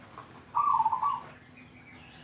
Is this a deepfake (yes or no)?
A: no